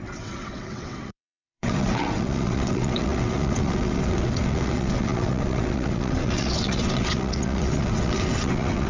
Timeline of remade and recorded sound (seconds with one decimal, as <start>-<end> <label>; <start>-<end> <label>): 0.0-8.9 remade